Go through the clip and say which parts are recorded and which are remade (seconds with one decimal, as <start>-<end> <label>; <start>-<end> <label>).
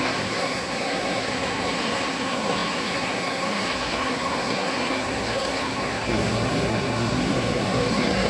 0.0-8.3 remade